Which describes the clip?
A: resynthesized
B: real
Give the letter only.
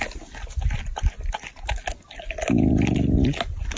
B